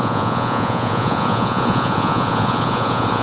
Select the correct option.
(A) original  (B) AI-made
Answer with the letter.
B